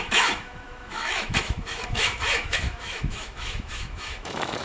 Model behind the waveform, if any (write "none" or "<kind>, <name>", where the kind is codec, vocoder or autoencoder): autoencoder, DAC-VAE